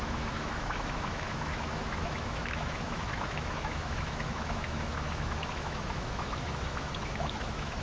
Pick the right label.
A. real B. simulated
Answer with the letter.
B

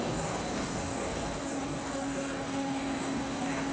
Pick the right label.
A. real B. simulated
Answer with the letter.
B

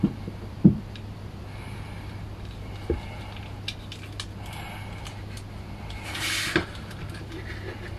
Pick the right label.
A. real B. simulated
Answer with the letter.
A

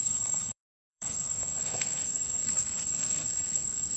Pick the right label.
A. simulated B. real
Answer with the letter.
A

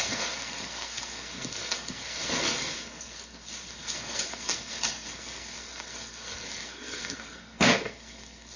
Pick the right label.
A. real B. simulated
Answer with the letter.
B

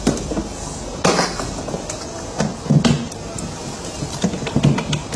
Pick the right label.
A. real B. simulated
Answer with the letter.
A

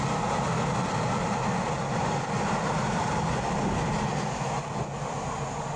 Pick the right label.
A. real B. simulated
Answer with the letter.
A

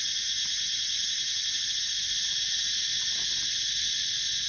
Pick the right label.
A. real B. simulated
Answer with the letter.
A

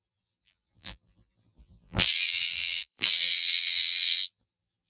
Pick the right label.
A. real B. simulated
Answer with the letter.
B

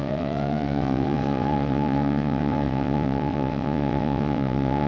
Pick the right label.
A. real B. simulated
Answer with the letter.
B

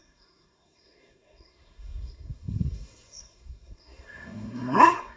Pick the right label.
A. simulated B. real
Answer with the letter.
A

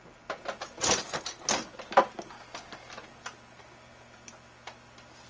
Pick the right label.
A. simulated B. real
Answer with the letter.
B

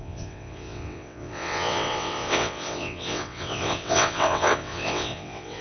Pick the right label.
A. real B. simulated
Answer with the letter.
B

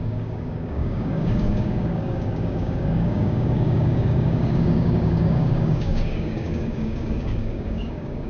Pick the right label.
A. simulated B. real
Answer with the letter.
A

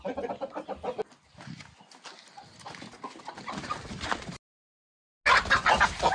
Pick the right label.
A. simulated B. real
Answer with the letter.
B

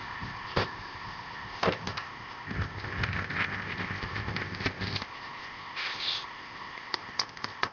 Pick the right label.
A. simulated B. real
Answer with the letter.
A